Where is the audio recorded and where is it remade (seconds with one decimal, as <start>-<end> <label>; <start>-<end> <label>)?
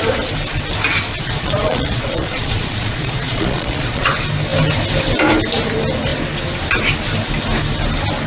0.0-1.1 recorded; 1.1-4.1 remade; 4.1-8.3 recorded